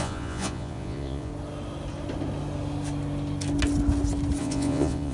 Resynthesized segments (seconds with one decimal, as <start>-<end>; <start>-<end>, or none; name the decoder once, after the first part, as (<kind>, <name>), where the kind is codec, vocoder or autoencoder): 0.0-1.3 (vocoder, Vocos); 4.4-5.1